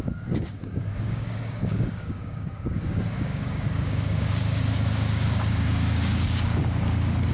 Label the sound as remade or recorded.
remade